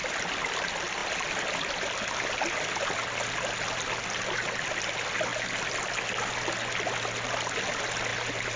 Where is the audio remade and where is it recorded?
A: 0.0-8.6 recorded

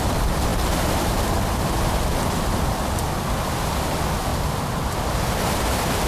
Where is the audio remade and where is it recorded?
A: 0.0-4.3 recorded; 4.3-5.2 remade; 5.2-6.1 recorded

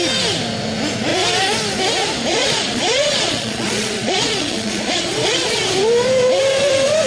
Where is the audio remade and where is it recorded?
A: 0.0-2.3 recorded; 2.3-5.6 remade; 5.6-7.1 recorded

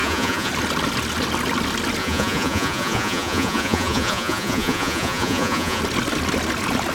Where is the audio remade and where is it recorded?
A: 0.0-0.5 remade; 0.5-2.0 recorded; 2.0-5.8 remade; 5.8-6.9 recorded

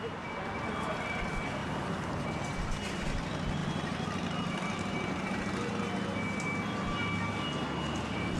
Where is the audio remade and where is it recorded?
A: 0.0-3.6 recorded; 3.6-5.7 remade; 5.7-8.4 recorded